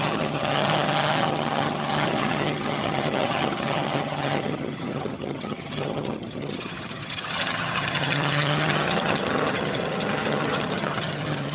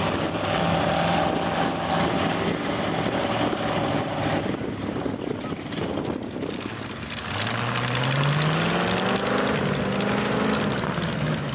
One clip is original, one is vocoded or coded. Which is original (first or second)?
second